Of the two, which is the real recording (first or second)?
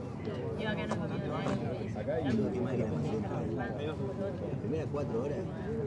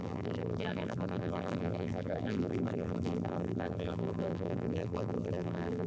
first